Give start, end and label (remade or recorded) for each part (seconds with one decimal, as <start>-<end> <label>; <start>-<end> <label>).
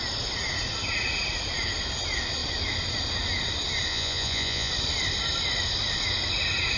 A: 0.0-3.9 recorded; 3.9-4.7 remade; 4.7-6.8 recorded